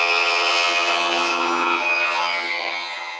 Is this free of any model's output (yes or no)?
no